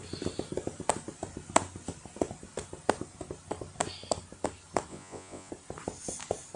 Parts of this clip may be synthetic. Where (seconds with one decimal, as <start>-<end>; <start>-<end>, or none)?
4.9-5.5